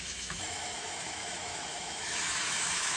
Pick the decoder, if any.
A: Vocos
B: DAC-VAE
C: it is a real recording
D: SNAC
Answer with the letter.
B